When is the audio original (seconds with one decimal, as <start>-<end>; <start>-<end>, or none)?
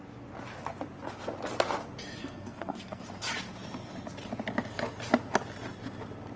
0.0-2.2; 3.0-6.4